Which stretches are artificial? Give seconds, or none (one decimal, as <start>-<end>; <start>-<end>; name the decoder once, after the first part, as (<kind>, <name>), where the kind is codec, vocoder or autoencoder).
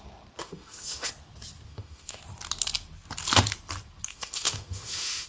0.4-1.1 (autoencoder, DAC-VAE); 1.7-2.2; 4.1-5.3